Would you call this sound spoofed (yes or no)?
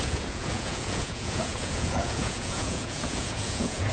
yes